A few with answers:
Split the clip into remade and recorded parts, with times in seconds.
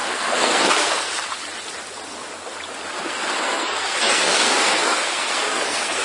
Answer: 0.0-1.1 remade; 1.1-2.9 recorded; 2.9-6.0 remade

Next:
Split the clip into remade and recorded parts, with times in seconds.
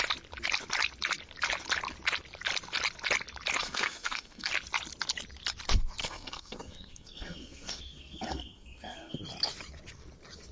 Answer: 0.0-3.6 recorded; 3.6-4.5 remade; 4.5-6.0 recorded; 6.0-9.2 remade; 9.2-10.5 recorded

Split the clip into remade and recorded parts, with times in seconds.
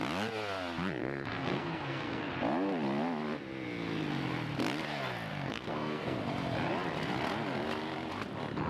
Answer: 0.0-1.0 recorded; 1.0-2.3 remade; 2.3-5.3 recorded; 5.3-6.2 remade; 6.2-8.7 recorded